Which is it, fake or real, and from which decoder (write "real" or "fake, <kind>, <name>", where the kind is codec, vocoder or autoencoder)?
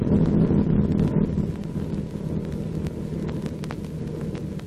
real